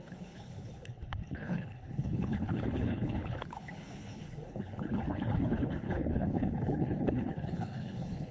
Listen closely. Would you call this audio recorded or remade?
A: remade